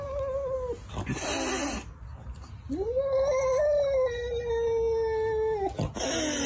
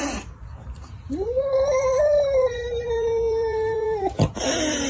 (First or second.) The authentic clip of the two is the first